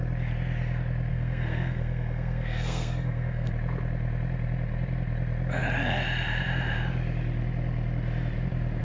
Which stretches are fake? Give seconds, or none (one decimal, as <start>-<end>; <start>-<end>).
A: 1.1-3.5